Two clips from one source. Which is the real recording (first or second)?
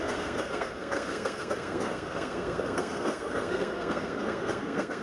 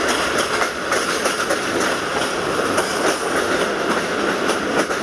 second